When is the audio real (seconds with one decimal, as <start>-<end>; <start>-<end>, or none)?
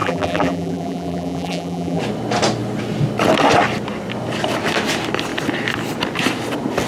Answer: 2.0-6.9